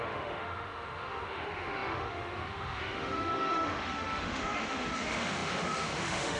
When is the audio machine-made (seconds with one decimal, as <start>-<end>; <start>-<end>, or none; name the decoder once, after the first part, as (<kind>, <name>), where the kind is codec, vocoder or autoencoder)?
0.0-6.4 (autoencoder, DAC-VAE)